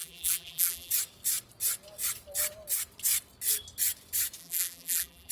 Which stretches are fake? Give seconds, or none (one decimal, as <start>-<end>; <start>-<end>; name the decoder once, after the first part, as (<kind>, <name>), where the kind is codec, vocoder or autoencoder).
0.0-0.9 (vocoder, BigVGAN v2); 4.4-5.3